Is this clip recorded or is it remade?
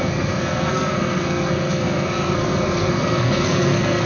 remade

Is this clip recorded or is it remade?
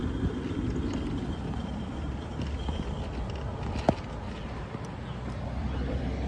recorded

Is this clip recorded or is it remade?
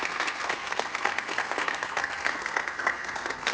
remade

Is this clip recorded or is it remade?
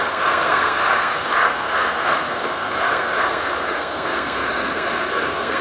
remade